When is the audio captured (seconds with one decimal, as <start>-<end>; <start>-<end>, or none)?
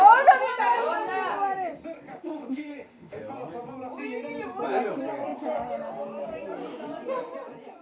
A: 0.0-2.1; 3.2-7.8